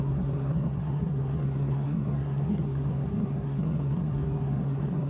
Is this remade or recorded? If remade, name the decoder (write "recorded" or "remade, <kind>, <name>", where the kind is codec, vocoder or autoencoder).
remade, codec, SNAC